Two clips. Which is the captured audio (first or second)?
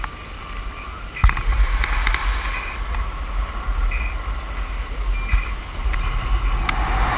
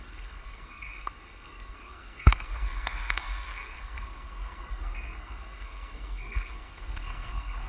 first